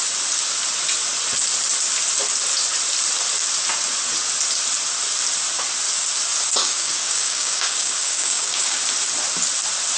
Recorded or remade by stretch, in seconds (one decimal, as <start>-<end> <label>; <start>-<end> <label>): 0.0-6.6 recorded; 6.6-8.8 remade; 8.8-10.0 recorded